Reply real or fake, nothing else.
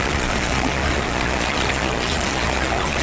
fake